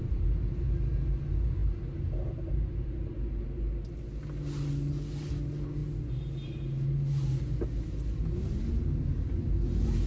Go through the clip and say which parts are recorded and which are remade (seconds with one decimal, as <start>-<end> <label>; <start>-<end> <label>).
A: 0.0-10.1 recorded